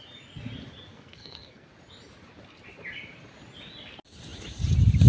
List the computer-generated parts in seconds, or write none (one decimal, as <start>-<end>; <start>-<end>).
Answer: 0.9-1.7